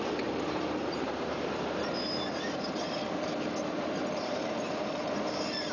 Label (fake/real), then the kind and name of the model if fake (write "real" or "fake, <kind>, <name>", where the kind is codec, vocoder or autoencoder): fake, vocoder, BigVGAN v2